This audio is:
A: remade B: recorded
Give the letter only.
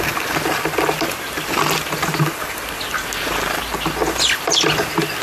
B